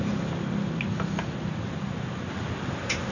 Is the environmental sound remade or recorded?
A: recorded